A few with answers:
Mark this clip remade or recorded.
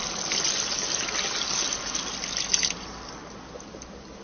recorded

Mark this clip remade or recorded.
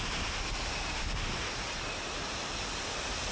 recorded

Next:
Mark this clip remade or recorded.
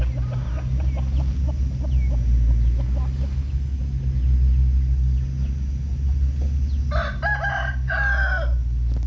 recorded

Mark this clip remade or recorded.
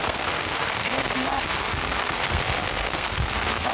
remade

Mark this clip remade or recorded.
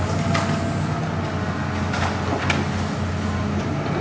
recorded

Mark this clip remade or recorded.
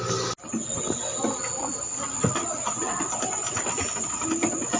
recorded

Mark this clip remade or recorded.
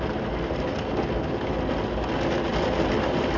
recorded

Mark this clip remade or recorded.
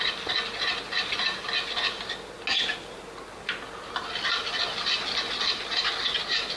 recorded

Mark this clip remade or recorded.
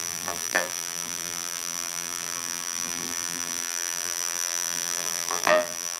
remade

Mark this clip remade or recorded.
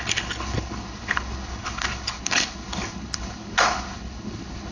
remade